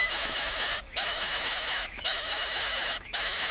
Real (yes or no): no